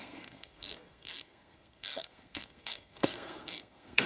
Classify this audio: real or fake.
fake